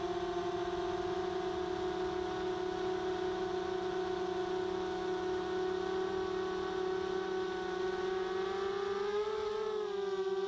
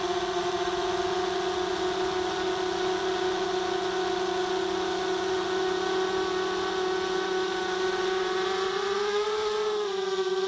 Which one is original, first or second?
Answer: first